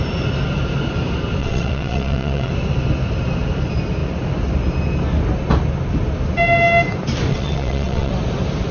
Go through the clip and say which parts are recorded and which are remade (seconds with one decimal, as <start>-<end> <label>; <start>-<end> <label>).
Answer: 0.0-1.4 recorded; 1.4-2.5 remade; 2.5-7.3 recorded; 7.3-8.1 remade; 8.1-8.7 recorded